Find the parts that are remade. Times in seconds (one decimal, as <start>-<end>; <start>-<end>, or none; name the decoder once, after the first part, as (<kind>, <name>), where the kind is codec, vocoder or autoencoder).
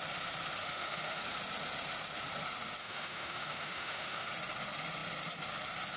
0.6-1.2 (autoencoder, DAC-VAE); 2.8-4.3